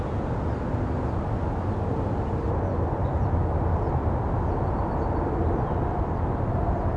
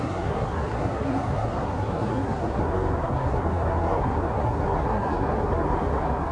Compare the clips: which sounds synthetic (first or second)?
second